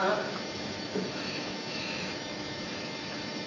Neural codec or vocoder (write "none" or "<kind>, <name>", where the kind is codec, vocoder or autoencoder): autoencoder, DAC-VAE